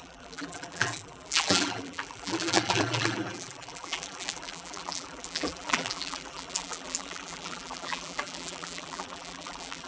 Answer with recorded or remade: remade